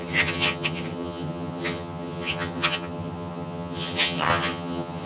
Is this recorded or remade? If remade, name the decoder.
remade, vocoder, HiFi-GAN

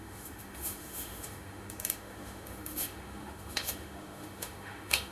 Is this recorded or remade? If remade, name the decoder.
remade, autoencoder, DAC-VAE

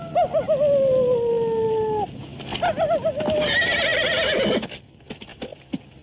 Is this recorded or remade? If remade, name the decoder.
recorded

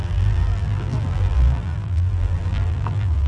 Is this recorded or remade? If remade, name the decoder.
remade, vocoder, BigVGAN v2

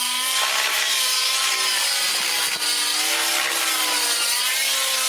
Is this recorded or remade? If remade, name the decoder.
recorded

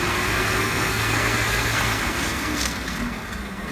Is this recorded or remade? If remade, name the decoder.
remade, codec, SNAC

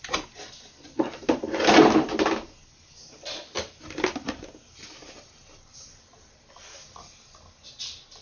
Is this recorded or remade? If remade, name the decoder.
recorded